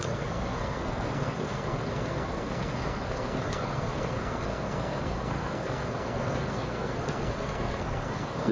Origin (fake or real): fake